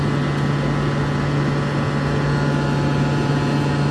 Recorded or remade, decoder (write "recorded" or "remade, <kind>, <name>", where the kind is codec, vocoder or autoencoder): recorded